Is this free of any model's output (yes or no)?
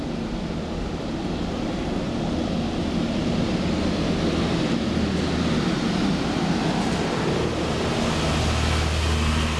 yes